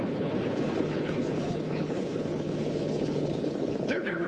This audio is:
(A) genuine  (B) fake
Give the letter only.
B